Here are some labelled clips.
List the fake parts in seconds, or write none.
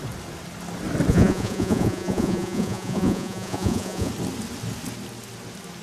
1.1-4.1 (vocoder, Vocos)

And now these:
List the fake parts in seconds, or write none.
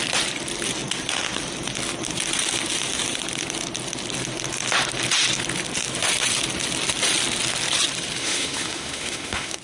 8.2-9.6 (autoencoder, DAC-VAE)